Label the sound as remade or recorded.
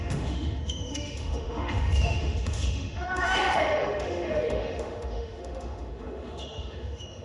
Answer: remade